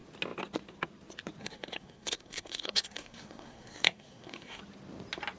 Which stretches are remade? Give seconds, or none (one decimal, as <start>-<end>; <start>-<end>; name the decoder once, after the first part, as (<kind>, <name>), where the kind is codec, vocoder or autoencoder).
1.4-4.6 (codec, SNAC)